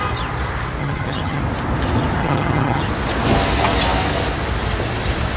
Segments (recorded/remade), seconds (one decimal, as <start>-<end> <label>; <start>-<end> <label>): 0.0-0.8 recorded; 0.8-1.4 remade; 1.4-2.2 recorded; 2.2-2.8 remade; 2.8-5.4 recorded